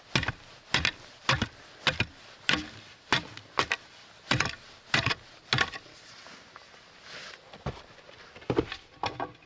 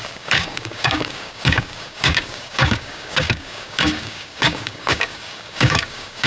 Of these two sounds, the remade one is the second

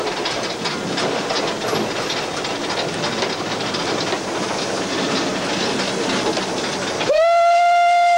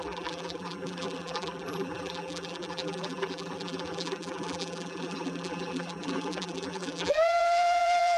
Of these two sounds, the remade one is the second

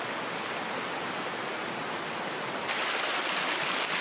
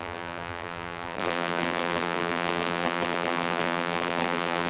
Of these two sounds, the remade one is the second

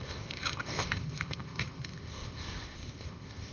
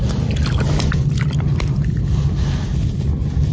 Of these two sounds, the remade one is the first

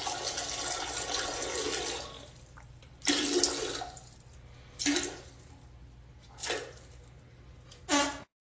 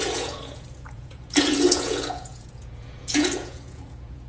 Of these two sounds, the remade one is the second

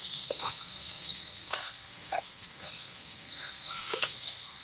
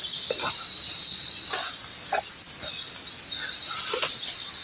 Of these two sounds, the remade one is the first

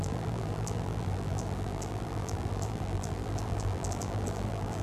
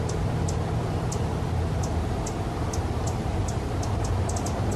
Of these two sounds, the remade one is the first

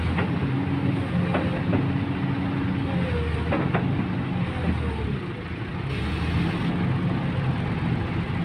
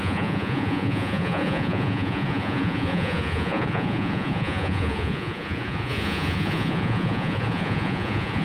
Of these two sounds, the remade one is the second